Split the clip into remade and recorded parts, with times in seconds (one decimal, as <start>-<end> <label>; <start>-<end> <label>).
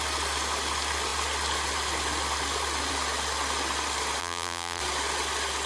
0.0-4.2 recorded; 4.2-4.8 remade; 4.8-5.7 recorded